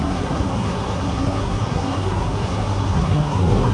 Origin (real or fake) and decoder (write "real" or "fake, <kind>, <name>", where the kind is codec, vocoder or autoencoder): fake, codec, SNAC